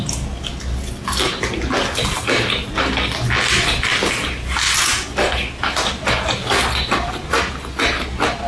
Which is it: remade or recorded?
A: recorded